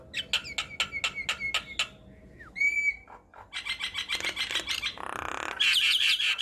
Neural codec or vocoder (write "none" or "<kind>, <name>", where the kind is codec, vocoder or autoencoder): none